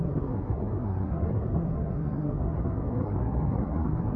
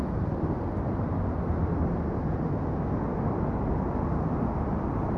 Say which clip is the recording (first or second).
second